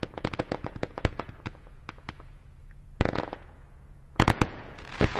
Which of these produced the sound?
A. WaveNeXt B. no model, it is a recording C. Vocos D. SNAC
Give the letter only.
C